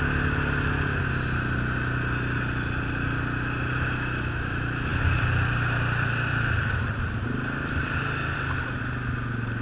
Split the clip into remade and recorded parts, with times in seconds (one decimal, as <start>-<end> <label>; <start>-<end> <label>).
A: 0.0-4.9 recorded; 4.9-8.8 remade; 8.8-9.6 recorded